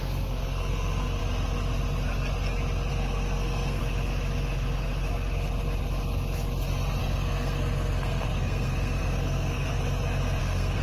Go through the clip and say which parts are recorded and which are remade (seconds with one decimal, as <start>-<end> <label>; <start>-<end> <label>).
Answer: 0.0-1.2 remade; 1.2-2.9 recorded; 2.9-3.8 remade; 3.8-7.0 recorded; 7.0-9.7 remade; 9.7-10.4 recorded; 10.4-10.8 remade